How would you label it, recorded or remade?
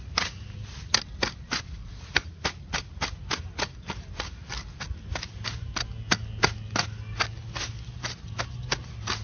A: recorded